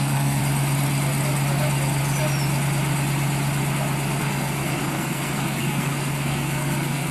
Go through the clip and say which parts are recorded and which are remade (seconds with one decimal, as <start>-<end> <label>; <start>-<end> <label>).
0.0-0.4 remade; 0.4-4.2 recorded; 4.2-7.1 remade